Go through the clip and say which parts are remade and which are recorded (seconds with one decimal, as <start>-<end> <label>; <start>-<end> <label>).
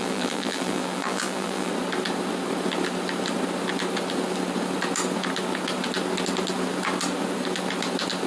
0.0-1.7 remade; 1.7-8.3 recorded